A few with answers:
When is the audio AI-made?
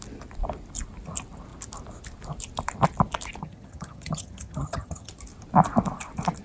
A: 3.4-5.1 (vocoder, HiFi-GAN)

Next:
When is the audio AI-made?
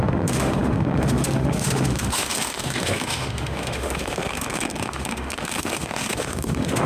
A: 0.0-6.9 (autoencoder, DAC-VAE)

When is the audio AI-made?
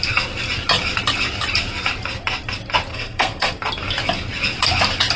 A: 2.9-3.5 (codec, SNAC)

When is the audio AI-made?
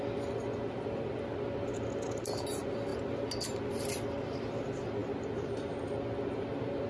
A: none